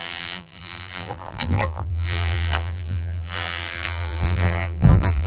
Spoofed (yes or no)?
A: yes